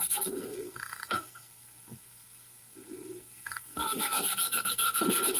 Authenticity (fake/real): fake